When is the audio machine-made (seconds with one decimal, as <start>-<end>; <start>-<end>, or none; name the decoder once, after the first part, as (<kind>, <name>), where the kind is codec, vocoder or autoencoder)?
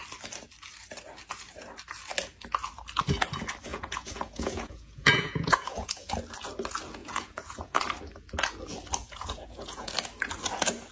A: 3.7-6.1 (vocoder, Vocos); 7.0-7.8; 9.0-9.9